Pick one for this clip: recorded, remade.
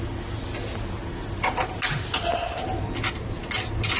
recorded